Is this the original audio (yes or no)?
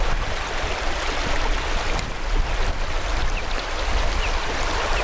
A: yes